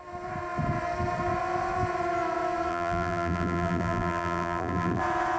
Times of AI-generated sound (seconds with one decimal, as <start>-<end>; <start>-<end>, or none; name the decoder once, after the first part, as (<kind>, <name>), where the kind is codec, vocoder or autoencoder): 2.7-5.0 (vocoder, BigVGAN v2)